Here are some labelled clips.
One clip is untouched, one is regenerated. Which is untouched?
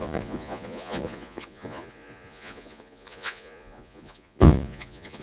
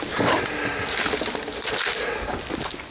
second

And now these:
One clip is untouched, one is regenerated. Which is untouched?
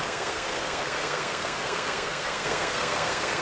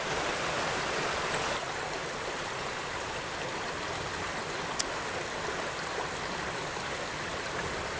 second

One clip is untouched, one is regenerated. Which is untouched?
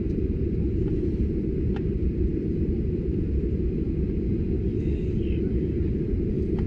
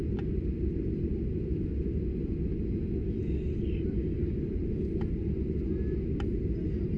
second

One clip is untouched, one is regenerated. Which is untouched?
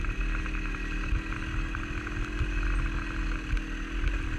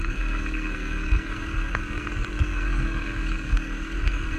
first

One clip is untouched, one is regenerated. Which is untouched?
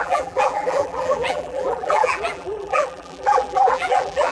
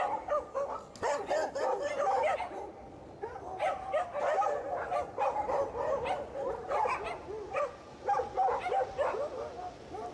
second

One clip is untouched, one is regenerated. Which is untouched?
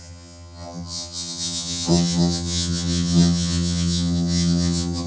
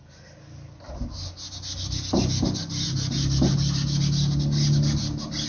second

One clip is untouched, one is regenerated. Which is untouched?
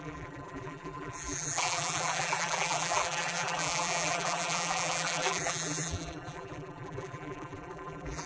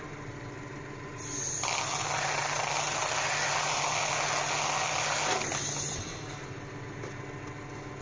second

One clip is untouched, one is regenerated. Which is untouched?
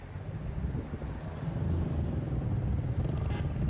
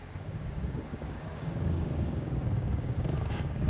first